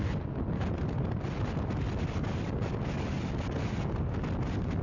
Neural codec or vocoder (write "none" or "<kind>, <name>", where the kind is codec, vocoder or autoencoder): none